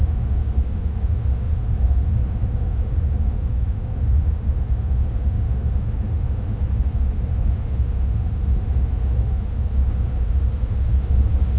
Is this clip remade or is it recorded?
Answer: remade